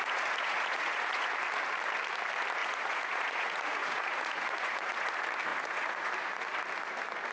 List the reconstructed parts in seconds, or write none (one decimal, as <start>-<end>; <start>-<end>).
0.0-1.3; 2.6-5.1; 5.5-6.1